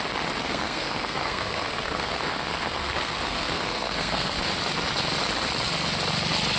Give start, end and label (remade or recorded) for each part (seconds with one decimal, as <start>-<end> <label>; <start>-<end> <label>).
0.0-0.4 recorded; 0.4-4.4 remade; 4.4-6.6 recorded